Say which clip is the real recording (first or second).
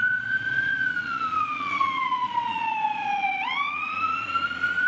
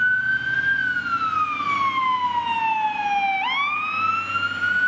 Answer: second